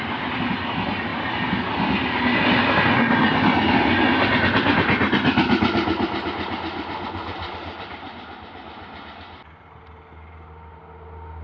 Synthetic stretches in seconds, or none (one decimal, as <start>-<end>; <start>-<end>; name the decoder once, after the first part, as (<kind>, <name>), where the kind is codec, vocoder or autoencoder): none